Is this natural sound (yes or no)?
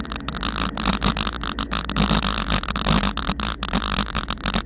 yes